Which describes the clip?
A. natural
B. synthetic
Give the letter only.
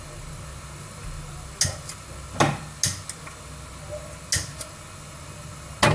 A